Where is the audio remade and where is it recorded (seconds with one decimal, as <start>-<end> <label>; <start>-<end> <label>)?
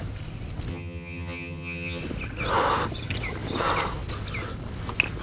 0.0-0.7 recorded; 0.7-2.0 remade; 2.0-5.2 recorded